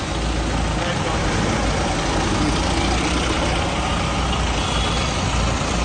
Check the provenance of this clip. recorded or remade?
recorded